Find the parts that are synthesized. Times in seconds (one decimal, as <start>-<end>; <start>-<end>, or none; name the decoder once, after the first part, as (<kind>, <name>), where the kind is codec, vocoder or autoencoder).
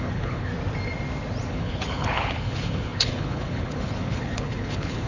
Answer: 0.0-0.5 (codec, HILCodec); 1.5-5.1